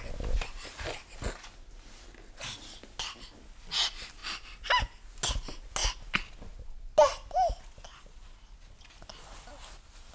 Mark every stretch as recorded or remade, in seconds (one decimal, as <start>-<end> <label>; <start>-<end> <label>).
0.0-10.1 recorded